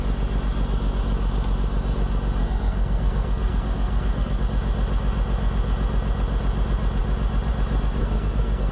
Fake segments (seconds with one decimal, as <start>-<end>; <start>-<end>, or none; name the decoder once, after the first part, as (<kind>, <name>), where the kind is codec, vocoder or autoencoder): 2.4-4.4 (codec, SNAC); 8.0-8.7